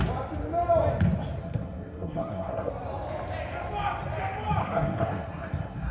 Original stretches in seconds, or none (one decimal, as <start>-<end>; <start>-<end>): 0.0-1.4; 2.7-4.6